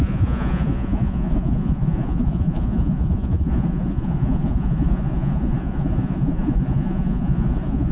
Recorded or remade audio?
remade